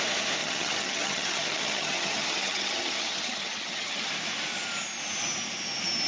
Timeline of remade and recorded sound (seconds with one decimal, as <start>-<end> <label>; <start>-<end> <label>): 0.0-0.4 recorded; 0.4-4.1 remade; 4.1-6.1 recorded